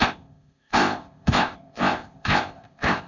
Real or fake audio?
fake